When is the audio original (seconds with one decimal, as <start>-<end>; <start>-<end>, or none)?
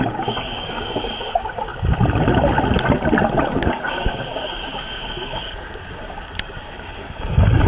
1.7-3.4